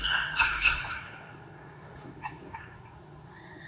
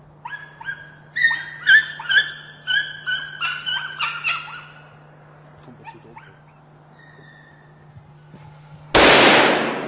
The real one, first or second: second